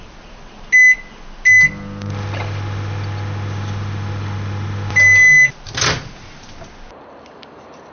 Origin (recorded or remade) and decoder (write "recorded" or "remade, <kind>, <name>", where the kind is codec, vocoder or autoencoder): recorded